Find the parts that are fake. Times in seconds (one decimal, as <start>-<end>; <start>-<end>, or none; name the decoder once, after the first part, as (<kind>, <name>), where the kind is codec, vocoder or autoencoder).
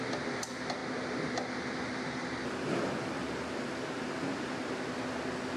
none